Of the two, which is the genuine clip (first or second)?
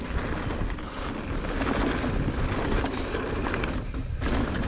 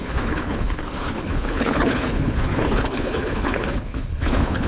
first